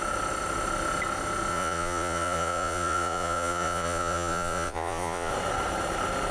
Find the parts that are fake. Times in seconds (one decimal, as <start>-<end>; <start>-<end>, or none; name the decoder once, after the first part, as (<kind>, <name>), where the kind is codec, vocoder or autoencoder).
1.5-5.3 (vocoder, Vocos)